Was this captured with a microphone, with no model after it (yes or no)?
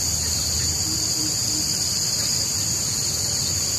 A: yes